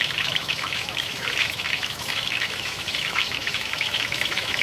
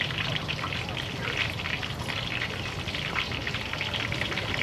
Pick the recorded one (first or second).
second